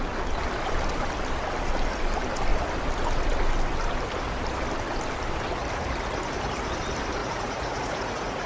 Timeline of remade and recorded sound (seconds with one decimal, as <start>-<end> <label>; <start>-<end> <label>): 0.0-7.2 recorded; 7.2-8.5 remade